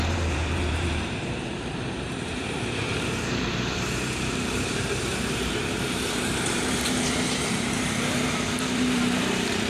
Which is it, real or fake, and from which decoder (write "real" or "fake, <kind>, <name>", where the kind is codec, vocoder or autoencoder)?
fake, vocoder, BigVGAN v2